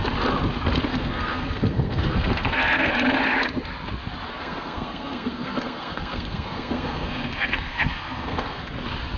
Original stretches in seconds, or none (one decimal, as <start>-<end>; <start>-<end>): 0.0-0.9; 2.9-4.3; 8.7-9.2